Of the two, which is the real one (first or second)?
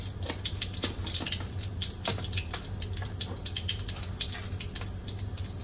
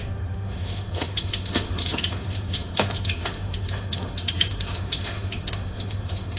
first